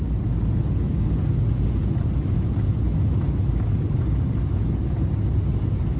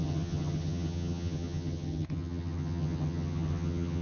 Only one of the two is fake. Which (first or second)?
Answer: second